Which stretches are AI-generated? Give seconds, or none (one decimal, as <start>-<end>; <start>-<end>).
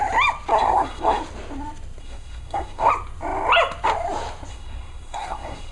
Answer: 0.5-1.2; 2.0-2.9; 4.5-5.7